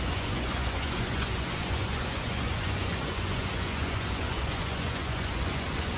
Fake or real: fake